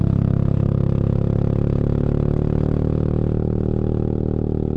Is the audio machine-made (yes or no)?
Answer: no